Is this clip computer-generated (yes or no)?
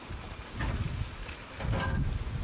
no